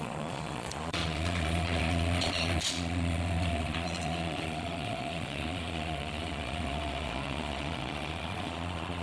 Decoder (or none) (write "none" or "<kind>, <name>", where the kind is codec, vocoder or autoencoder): vocoder, Vocos